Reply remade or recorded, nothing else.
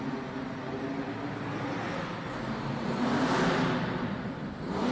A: recorded